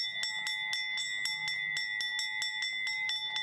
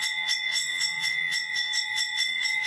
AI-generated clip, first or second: second